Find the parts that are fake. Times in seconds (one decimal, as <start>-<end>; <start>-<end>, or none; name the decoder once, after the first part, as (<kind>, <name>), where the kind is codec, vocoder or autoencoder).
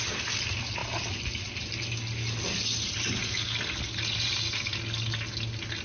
none